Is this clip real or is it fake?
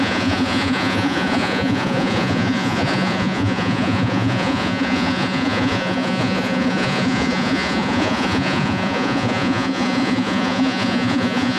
fake